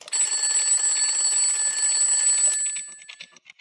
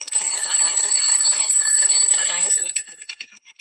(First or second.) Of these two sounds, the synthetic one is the second